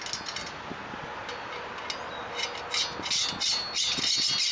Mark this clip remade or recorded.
recorded